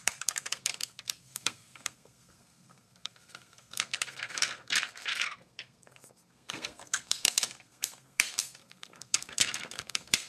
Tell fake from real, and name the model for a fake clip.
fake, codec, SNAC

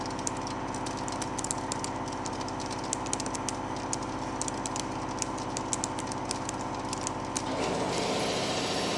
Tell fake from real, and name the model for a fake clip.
real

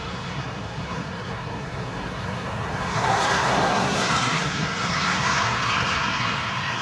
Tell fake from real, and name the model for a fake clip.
fake, codec, SNAC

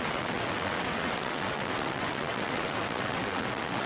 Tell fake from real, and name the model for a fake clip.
fake, vocoder, WaveNeXt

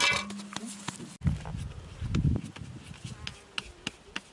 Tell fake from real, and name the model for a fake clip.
real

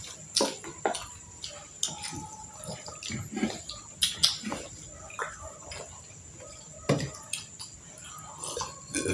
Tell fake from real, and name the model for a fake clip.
real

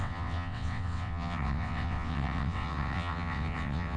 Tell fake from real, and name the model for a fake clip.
fake, vocoder, WaveNeXt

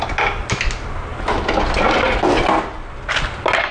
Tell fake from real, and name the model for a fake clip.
real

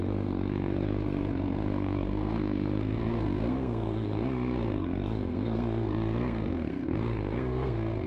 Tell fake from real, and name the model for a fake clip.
fake, codec, SNAC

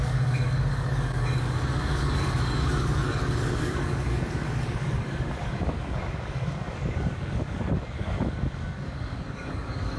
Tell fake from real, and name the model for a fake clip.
fake, codec, DAC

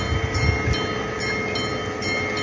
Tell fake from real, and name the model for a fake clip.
real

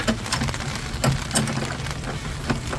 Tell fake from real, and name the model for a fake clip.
real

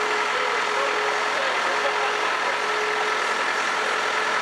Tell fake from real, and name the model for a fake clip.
real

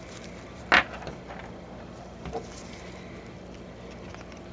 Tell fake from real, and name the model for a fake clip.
real